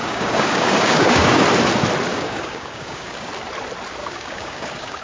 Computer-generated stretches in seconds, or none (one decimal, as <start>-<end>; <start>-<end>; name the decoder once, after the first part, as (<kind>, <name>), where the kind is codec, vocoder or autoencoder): 0.0-1.4 (codec, DAC); 2.1-3.3; 4.0-5.0